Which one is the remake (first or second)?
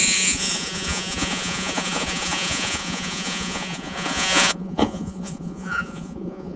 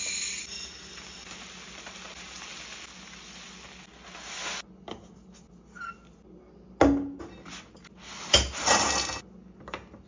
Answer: first